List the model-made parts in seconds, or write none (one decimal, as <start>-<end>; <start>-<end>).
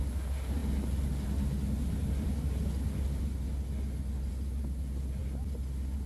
none